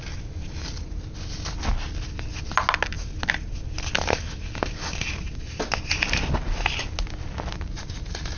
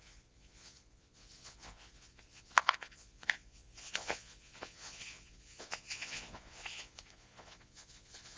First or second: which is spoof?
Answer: second